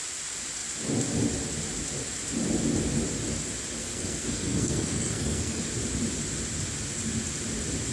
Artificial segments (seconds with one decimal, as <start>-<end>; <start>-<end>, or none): 3.8-5.6